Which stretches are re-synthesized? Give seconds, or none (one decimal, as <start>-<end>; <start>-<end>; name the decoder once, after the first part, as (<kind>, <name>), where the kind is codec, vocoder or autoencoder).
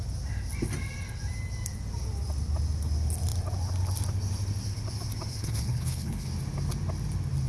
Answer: 5.3-6.3 (codec, HILCodec)